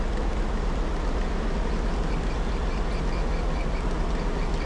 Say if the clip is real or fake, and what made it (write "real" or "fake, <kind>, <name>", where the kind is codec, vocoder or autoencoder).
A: real